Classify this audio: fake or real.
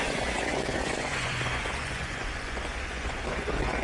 fake